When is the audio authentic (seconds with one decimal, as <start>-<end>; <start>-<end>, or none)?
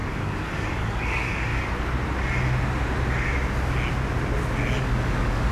1.5-4.8